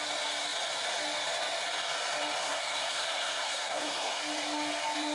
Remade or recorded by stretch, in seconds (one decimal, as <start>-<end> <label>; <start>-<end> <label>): 0.0-2.4 recorded; 2.4-4.2 remade; 4.2-5.1 recorded